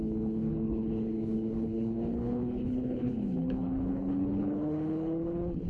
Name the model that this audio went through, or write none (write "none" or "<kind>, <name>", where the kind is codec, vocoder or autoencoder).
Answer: codec, HILCodec